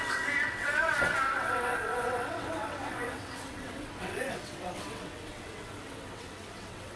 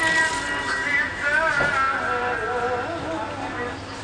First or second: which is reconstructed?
first